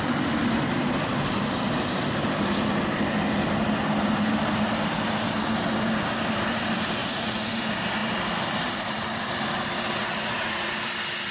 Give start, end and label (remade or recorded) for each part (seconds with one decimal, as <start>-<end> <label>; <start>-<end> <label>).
0.0-7.0 recorded; 7.0-7.6 remade; 7.6-10.0 recorded; 10.0-10.7 remade; 10.7-11.3 recorded